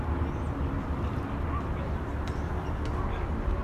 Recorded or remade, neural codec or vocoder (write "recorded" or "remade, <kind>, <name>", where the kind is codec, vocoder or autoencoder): recorded